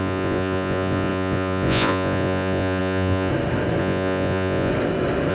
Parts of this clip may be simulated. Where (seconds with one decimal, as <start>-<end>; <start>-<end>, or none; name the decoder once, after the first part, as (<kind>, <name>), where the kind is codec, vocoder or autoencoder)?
0.0-3.3 (vocoder, Vocos); 3.8-4.7